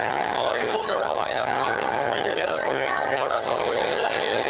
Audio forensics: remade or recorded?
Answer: remade